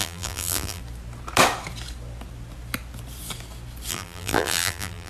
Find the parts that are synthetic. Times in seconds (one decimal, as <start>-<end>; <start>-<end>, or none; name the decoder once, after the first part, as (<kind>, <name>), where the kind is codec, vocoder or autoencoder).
0.0-0.8 (vocoder, BigVGAN v2); 3.9-5.1